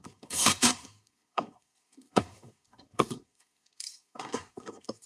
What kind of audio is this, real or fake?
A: fake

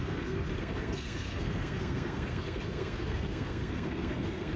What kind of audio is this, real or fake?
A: fake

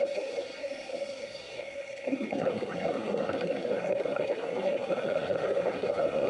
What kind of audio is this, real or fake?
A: fake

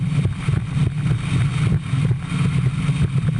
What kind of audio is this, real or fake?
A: real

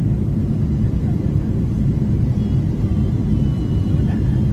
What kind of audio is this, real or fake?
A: real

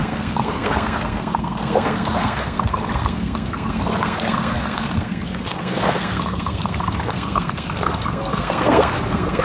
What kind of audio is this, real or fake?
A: fake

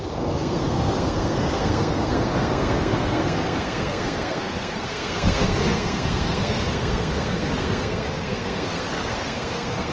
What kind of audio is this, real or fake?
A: fake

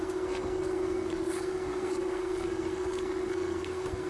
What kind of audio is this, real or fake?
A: fake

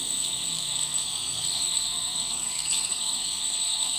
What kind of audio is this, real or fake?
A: fake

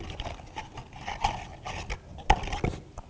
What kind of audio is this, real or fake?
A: real